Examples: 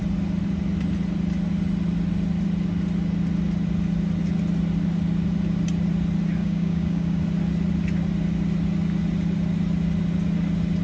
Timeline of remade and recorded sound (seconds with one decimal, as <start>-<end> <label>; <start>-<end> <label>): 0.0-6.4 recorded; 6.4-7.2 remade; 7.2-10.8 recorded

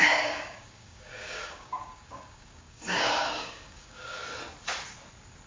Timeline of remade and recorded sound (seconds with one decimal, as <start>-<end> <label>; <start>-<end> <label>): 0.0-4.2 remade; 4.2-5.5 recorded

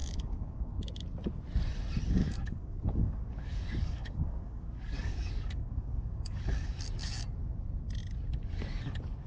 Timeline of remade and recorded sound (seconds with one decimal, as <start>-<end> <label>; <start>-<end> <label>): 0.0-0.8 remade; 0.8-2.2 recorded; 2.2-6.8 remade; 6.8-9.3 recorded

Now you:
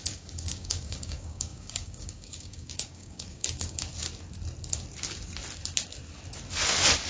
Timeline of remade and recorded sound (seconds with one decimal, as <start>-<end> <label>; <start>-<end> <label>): 0.0-3.9 remade; 3.9-7.1 recorded

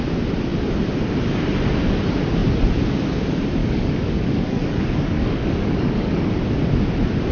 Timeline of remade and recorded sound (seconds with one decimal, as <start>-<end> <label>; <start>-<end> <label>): 0.0-3.6 recorded; 3.6-6.3 remade; 6.3-7.3 recorded

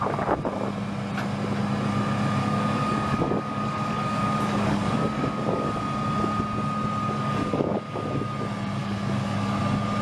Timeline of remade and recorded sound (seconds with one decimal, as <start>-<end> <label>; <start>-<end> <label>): 0.0-2.4 recorded; 2.4-5.8 remade; 5.8-7.0 recorded; 7.0-8.1 remade; 8.1-8.8 recorded; 8.8-9.6 remade; 9.6-10.0 recorded

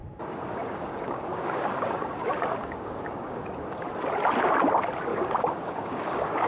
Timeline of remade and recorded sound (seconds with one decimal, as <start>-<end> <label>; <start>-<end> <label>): 0.0-3.9 remade; 3.9-5.1 recorded; 5.1-6.5 remade